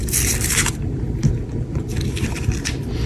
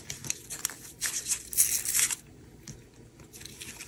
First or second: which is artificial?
first